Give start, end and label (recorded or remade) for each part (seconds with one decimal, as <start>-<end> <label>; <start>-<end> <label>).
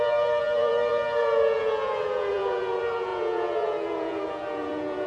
0.0-5.1 remade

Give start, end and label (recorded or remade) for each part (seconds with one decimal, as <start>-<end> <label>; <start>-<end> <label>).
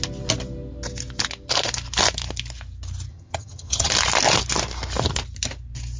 0.0-3.1 recorded; 3.1-3.9 remade; 3.9-6.0 recorded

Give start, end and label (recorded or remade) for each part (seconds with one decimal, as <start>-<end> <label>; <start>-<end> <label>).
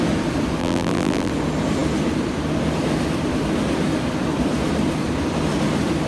0.0-0.6 recorded; 0.6-1.3 remade; 1.3-6.1 recorded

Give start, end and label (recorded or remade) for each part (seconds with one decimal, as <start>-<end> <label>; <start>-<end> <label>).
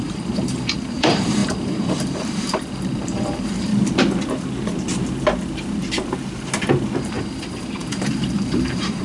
0.0-3.7 remade; 3.7-7.0 recorded; 7.0-9.0 remade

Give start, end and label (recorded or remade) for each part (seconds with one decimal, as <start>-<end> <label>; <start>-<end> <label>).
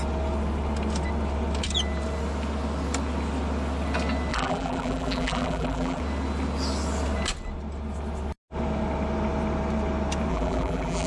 0.0-4.3 recorded; 4.3-6.0 remade; 6.0-10.3 recorded; 10.3-11.1 remade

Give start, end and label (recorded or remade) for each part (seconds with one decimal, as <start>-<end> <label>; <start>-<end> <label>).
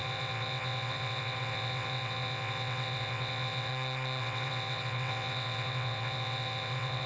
0.0-3.7 remade; 3.7-4.2 recorded; 4.2-7.1 remade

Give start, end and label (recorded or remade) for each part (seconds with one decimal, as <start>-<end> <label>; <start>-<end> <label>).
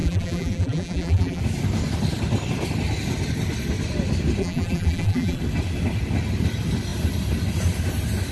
0.0-1.4 remade; 1.4-4.4 recorded; 4.4-5.4 remade; 5.4-8.3 recorded